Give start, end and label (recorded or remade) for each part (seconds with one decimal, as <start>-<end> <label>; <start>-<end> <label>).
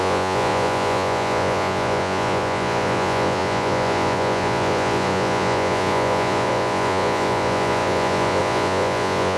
0.0-9.4 remade